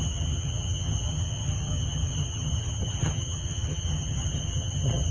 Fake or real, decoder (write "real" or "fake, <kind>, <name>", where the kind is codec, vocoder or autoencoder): fake, vocoder, HiFi-GAN